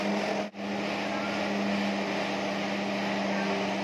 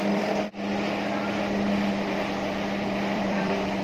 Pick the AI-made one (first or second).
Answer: second